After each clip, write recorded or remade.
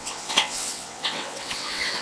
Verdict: remade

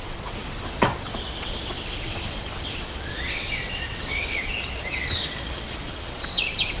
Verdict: remade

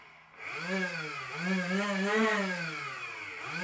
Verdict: recorded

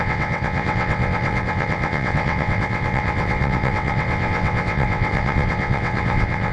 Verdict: remade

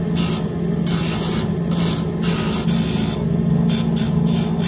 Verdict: recorded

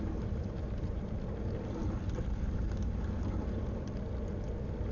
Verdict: recorded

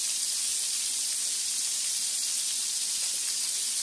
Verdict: recorded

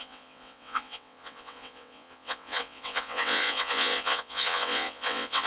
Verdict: remade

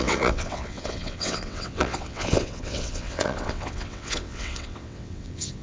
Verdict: remade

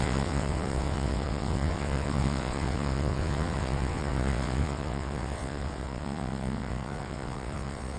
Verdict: remade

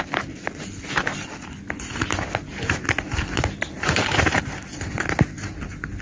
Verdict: recorded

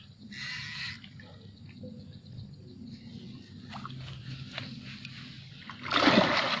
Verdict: recorded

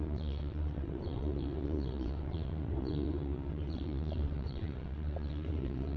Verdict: remade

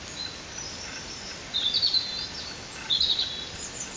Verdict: recorded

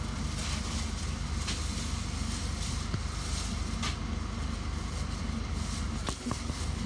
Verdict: recorded